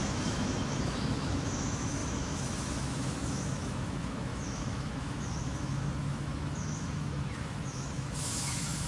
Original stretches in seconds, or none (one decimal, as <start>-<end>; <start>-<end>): none